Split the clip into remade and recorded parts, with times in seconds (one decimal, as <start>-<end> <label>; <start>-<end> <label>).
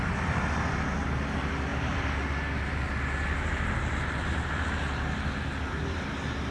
0.0-6.5 recorded